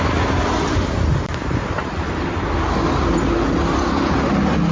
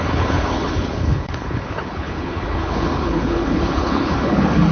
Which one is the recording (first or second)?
first